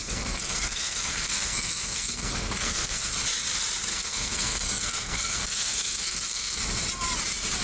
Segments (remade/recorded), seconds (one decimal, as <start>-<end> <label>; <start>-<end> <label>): 0.0-3.1 remade; 3.1-3.9 recorded; 3.9-6.6 remade; 6.6-7.6 recorded